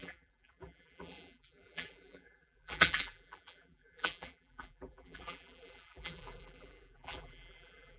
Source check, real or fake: fake